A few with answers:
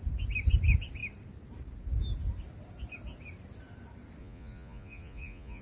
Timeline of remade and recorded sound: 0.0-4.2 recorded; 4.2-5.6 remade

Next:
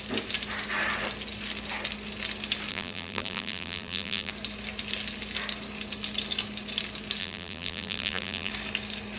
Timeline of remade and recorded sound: 0.0-2.7 recorded; 2.7-4.3 remade; 4.3-7.2 recorded; 7.2-8.5 remade; 8.5-9.2 recorded

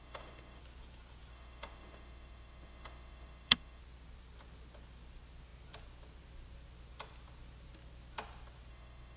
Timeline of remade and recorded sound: 0.0-0.6 remade; 0.6-1.3 recorded; 1.3-3.8 remade; 3.8-8.7 recorded; 8.7-9.2 remade

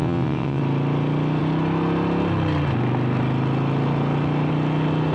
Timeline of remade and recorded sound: 0.0-0.6 remade; 0.6-5.1 recorded